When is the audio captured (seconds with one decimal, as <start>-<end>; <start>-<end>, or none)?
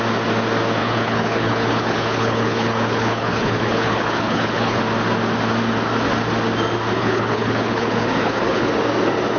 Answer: 0.0-0.8; 4.8-7.0; 8.7-9.4